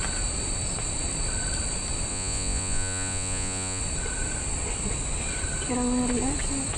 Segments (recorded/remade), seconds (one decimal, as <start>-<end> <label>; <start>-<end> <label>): 0.0-2.1 recorded; 2.1-3.8 remade; 3.8-6.8 recorded